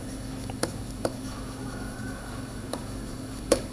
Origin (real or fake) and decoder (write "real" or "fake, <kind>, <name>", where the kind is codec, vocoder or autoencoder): fake, codec, DAC